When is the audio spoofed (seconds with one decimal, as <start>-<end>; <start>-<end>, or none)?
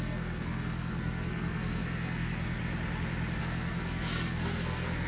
0.0-2.6; 3.4-5.1